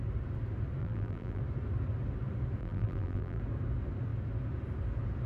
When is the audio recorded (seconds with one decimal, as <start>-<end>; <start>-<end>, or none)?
0.0-0.8; 1.4-2.6; 3.4-5.3